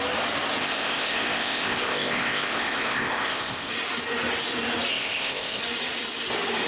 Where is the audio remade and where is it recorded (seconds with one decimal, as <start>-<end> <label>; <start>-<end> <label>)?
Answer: 0.0-0.6 recorded; 0.6-3.7 remade; 3.7-4.9 recorded; 4.9-5.6 remade; 5.6-6.7 recorded

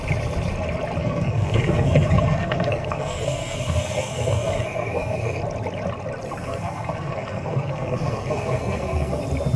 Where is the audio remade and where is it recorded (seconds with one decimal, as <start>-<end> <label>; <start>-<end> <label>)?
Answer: 0.0-1.0 recorded; 1.0-5.4 remade; 5.4-6.4 recorded; 6.4-9.2 remade; 9.2-9.6 recorded

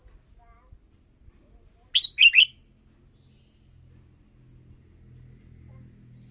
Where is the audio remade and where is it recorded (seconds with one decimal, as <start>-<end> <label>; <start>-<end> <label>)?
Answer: 0.0-6.3 recorded

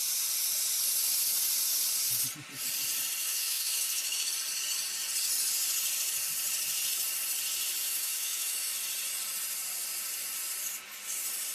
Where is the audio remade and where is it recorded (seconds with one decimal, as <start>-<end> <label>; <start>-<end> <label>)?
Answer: 0.0-3.2 recorded; 3.2-4.3 remade; 4.3-7.8 recorded; 7.8-8.7 remade; 8.7-11.5 recorded

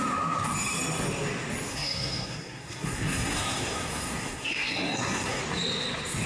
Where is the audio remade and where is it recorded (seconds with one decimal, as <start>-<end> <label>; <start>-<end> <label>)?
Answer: 0.0-1.7 recorded; 1.7-5.4 remade; 5.4-6.3 recorded

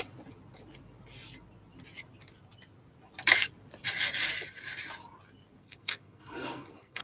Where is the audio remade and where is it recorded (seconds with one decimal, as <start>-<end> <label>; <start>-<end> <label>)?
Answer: 0.0-5.6 recorded; 5.6-7.0 remade

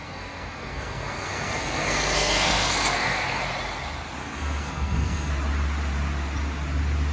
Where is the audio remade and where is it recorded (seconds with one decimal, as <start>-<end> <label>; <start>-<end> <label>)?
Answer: 0.0-3.4 remade; 3.4-4.2 recorded; 4.2-5.3 remade; 5.3-7.1 recorded